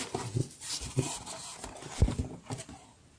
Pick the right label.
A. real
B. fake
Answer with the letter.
A